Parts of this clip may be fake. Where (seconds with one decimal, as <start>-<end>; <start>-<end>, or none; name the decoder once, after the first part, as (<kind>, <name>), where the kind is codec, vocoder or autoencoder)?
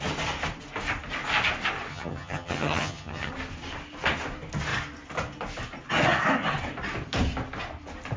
1.9-3.3 (vocoder, HiFi-GAN)